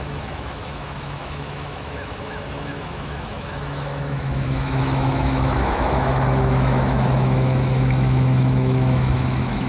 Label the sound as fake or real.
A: fake